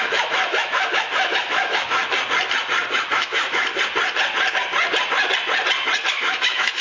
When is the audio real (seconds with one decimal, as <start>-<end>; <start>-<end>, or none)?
2.0-3.1; 3.7-6.1

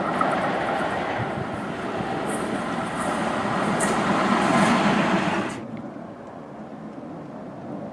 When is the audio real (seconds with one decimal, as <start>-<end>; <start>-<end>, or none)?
0.0-5.6; 6.8-7.9

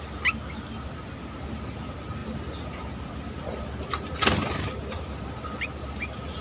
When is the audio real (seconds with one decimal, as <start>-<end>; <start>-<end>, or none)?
0.0-6.4

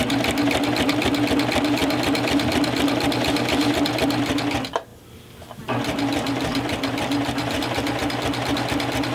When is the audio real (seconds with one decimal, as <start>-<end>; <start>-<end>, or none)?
0.0-9.1

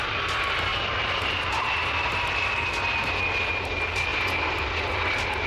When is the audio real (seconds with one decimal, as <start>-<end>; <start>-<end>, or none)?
0.0-0.7; 1.9-5.5

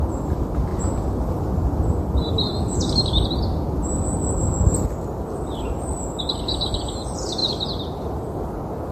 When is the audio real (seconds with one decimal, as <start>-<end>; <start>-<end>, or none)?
0.0-8.9

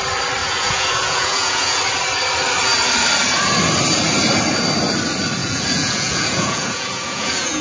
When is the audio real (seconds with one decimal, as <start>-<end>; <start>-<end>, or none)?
0.0-0.4; 1.8-5.4

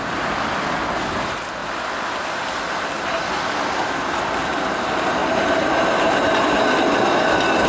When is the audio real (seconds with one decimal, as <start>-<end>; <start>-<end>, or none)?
0.0-7.7